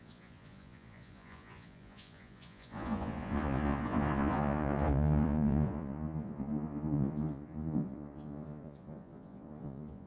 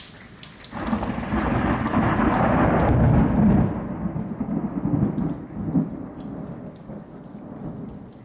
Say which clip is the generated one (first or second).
first